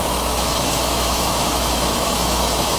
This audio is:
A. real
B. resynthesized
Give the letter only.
B